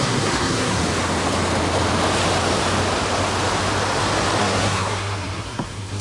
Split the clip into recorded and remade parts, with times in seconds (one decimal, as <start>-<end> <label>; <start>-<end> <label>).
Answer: 0.0-0.8 remade; 0.8-4.4 recorded; 4.4-6.0 remade